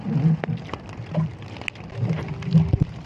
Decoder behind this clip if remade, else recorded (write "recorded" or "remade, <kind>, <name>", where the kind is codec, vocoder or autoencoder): recorded